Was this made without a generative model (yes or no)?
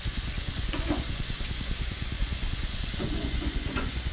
no